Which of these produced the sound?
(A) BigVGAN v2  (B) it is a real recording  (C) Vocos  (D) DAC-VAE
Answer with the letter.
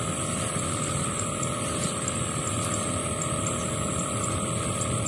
B